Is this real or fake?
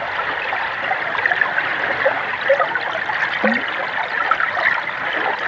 real